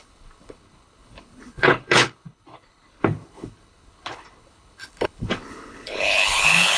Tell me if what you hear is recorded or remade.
remade